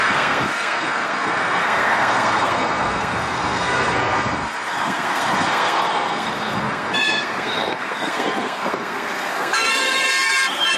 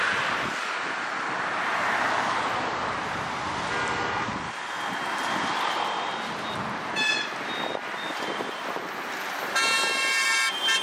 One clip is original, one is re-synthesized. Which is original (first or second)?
second